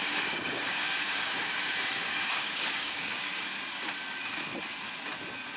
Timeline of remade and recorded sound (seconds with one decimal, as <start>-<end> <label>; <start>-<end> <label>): 0.0-3.4 remade; 3.4-5.6 recorded